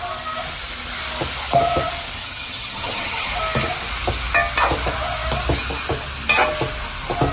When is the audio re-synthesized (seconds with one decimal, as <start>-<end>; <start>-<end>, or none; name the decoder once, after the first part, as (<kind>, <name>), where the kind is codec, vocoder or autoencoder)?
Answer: 2.2-3.3 (vocoder, HiFi-GAN)